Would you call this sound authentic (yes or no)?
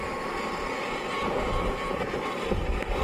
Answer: no